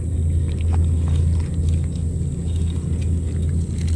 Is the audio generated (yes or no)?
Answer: no